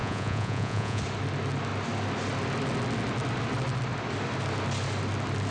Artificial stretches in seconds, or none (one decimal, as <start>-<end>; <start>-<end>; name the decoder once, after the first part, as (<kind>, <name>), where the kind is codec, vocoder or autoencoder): 0.0-1.0 (vocoder, Vocos)